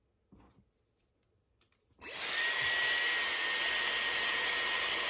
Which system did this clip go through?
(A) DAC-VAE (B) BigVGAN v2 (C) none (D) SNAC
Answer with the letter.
C